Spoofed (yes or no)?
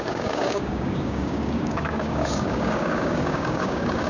yes